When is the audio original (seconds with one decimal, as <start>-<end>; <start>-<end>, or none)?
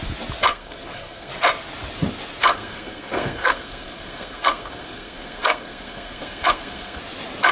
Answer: 0.0-0.5; 1.3-2.5; 7.0-7.5